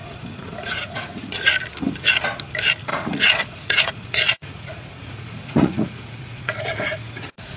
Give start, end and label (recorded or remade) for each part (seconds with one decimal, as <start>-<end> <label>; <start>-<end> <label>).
0.0-1.5 remade; 1.5-2.9 recorded; 2.9-7.6 remade

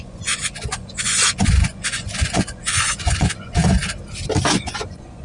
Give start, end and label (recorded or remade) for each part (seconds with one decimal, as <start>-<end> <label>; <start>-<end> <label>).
0.0-3.8 remade; 3.8-4.5 recorded; 4.5-5.2 remade

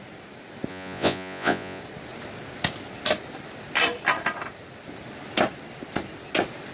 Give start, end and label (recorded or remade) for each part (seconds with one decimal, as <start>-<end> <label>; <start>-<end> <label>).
0.0-0.7 recorded; 0.7-1.8 remade; 1.8-6.7 recorded

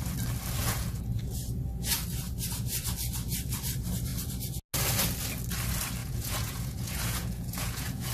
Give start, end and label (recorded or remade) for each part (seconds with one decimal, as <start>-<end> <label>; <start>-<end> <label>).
0.0-0.6 recorded; 0.6-1.2 remade; 1.2-6.0 recorded; 6.0-8.1 remade

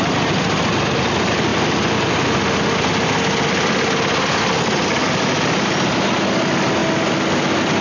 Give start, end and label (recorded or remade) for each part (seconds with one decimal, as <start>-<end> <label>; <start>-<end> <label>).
0.0-7.8 recorded

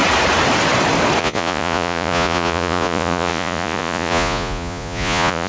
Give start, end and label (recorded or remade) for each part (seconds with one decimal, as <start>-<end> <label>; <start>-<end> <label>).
0.0-1.2 recorded; 1.2-5.5 remade

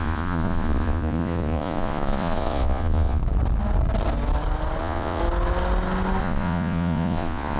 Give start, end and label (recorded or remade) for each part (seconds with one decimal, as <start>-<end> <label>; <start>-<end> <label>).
0.0-3.2 remade; 3.2-4.8 recorded; 4.8-5.2 remade; 5.2-6.2 recorded; 6.2-7.6 remade